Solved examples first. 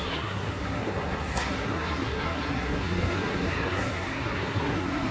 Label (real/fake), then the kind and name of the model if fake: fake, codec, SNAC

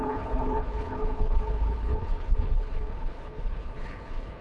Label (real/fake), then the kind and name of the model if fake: fake, codec, HILCodec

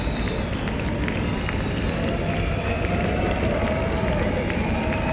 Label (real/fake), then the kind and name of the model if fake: real